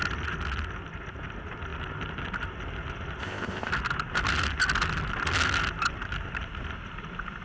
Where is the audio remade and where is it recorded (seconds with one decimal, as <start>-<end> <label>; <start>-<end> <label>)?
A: 0.0-3.2 recorded; 3.2-3.7 remade; 3.7-7.4 recorded